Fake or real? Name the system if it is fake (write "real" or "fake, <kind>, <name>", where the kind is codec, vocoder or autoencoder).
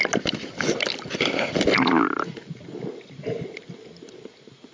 real